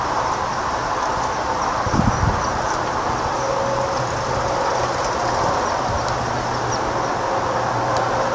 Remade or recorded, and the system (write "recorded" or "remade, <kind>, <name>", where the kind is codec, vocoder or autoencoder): recorded